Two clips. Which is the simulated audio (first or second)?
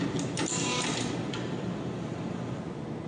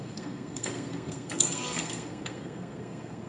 second